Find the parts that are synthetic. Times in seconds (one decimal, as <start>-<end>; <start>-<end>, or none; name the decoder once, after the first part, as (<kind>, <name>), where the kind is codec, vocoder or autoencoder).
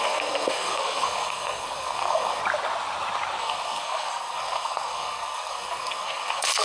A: 0.0-2.4 (codec, SNAC); 3.4-6.6